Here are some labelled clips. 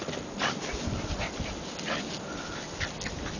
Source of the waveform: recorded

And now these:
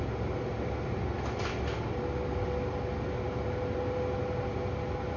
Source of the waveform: recorded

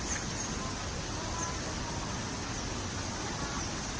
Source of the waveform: recorded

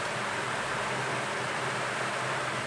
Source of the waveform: recorded